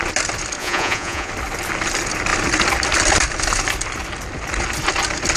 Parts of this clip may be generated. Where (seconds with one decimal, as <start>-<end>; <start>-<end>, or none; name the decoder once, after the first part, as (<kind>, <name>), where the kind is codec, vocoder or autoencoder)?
0.6-1.3 (vocoder, Vocos)